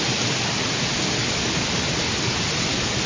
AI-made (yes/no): no